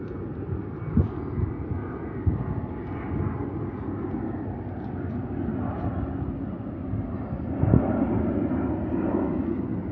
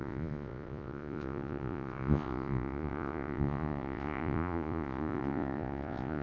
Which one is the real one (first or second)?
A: first